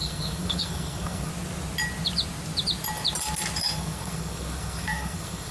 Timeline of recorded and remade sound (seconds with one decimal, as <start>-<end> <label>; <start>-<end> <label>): 0.0-1.3 remade; 1.3-3.6 recorded; 3.6-5.5 remade